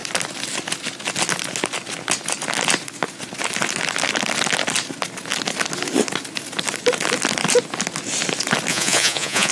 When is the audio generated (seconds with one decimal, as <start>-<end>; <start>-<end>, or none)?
8.7-9.5